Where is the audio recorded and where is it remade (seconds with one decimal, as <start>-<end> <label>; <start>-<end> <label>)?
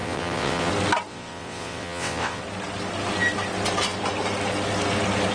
0.0-0.7 remade; 0.7-1.1 recorded; 1.1-2.4 remade; 2.4-5.3 recorded